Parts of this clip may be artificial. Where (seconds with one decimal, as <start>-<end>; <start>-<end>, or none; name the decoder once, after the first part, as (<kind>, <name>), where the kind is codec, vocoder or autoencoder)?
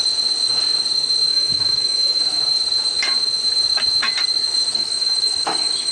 1.3-2.4 (autoencoder, DAC-VAE); 4.7-5.9